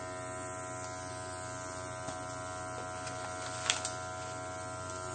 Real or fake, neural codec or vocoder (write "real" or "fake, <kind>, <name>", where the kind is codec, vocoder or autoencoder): real